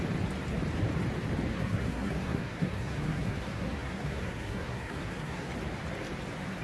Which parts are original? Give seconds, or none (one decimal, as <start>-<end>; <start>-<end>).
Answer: 0.0-1.5; 5.5-6.6